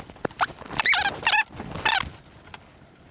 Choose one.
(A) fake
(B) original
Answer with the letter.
B